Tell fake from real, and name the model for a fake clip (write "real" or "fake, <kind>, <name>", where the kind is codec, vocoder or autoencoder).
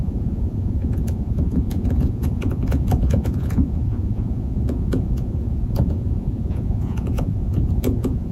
fake, vocoder, Vocos